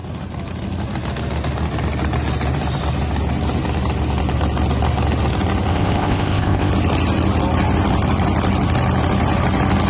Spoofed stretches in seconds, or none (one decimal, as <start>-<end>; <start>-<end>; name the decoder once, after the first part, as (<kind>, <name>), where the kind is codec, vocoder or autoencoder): 5.7-6.7 (codec, ZipCodec)